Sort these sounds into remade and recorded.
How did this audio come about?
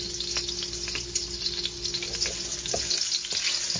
recorded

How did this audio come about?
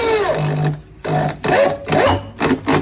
recorded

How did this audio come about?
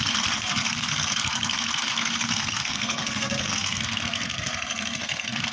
remade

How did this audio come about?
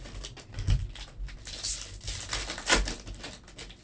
recorded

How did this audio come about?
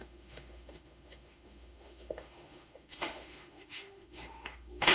remade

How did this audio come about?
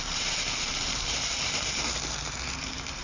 remade